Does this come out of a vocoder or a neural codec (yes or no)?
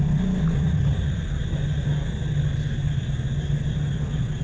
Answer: no